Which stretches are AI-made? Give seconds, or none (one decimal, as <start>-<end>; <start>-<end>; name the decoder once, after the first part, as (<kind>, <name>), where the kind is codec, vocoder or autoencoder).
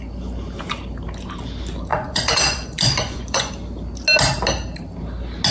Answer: 1.9-3.5 (vocoder, Vocos)